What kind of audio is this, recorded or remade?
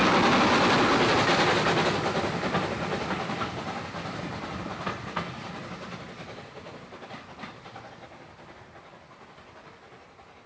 recorded